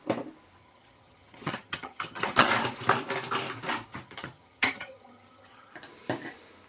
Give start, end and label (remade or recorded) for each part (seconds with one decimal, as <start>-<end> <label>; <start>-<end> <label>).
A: 0.0-0.6 recorded; 0.6-2.5 remade; 2.5-3.9 recorded; 3.9-5.7 remade; 5.7-6.7 recorded